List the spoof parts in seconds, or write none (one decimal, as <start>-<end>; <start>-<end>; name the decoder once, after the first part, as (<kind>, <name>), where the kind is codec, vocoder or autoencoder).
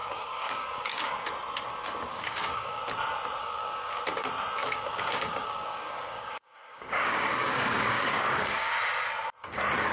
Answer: 0.0-1.1 (codec, DAC); 2.1-2.8; 3.4-4.0; 4.6-8.7